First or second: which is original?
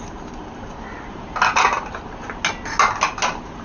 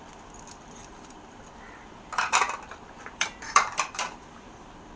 first